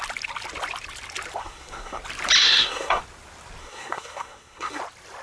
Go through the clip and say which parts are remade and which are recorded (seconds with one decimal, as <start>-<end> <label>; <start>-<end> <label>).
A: 0.0-1.4 recorded; 1.4-2.0 remade; 2.0-2.4 recorded; 2.4-3.0 remade; 3.0-3.6 recorded; 3.6-4.8 remade; 4.8-5.2 recorded